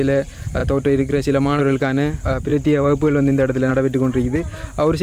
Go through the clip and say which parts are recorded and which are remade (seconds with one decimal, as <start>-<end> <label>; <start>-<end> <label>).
0.0-0.6 recorded; 0.6-1.6 remade; 1.6-2.5 recorded; 2.5-3.7 remade; 3.7-5.0 recorded